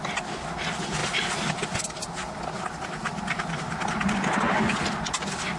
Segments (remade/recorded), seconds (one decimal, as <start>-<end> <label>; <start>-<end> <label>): 0.0-5.6 recorded